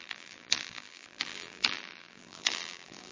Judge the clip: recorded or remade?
remade